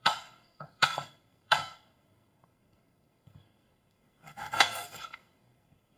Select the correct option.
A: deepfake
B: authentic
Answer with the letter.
A